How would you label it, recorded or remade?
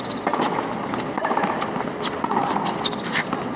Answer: recorded